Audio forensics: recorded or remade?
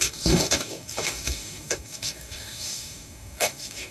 remade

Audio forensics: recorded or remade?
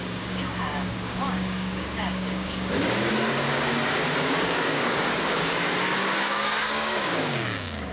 remade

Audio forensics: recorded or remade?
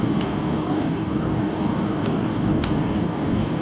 remade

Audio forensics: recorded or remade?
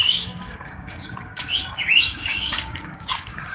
remade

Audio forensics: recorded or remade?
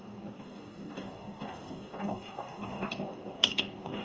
remade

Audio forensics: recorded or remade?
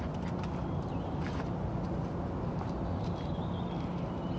recorded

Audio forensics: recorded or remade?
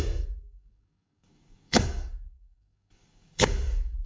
remade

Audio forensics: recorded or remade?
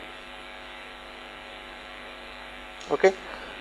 remade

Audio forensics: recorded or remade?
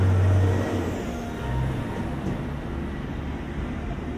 recorded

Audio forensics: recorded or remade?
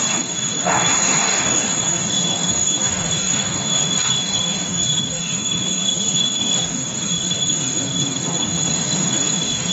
remade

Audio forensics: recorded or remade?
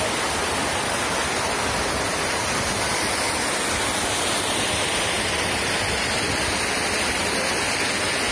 recorded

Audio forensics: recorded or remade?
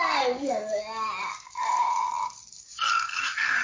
remade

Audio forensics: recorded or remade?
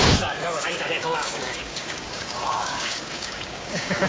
remade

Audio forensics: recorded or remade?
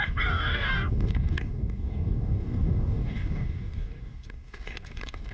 remade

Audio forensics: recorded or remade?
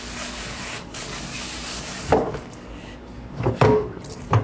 remade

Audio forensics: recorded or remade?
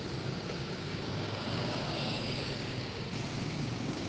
remade